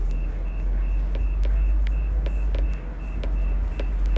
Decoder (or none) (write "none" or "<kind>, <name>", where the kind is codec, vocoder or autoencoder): none